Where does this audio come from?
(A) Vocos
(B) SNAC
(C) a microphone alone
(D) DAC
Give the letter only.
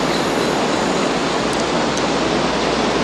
C